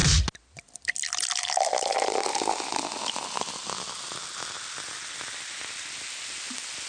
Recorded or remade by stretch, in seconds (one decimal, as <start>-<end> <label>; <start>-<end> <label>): 0.0-6.9 recorded